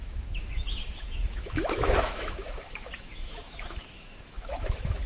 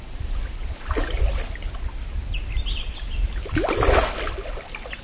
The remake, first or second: first